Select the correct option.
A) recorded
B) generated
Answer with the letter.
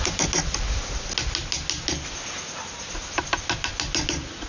A